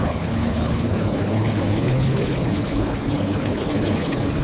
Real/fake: fake